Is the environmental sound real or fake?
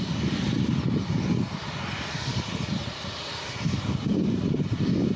real